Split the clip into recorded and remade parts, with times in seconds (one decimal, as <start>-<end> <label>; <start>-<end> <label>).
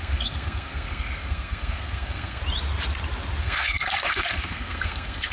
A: 0.0-2.4 remade; 2.4-3.4 recorded; 3.4-5.3 remade